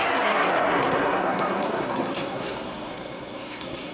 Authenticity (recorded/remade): remade